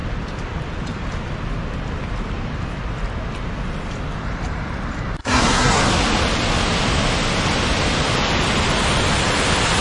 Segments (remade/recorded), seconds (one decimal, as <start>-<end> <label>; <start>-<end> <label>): 0.0-5.2 recorded; 5.2-5.8 remade; 5.8-9.8 recorded

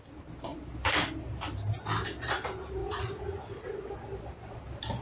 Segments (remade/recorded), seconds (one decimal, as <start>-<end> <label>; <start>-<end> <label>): 0.0-2.8 recorded; 2.8-3.9 remade; 3.9-5.0 recorded

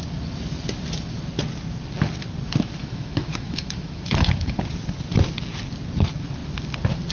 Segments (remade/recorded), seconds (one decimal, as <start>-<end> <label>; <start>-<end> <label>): 0.0-2.8 recorded; 2.8-4.6 remade; 4.6-7.1 recorded